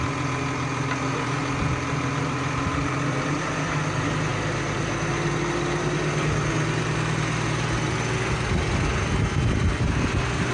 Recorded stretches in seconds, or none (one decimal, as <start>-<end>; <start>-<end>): 0.0-10.5